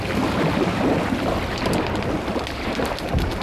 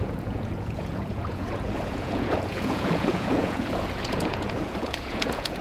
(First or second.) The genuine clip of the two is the first